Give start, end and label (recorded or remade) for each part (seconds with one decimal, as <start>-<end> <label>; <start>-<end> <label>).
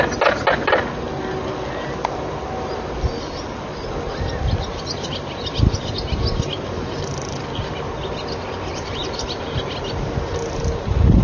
0.0-11.2 recorded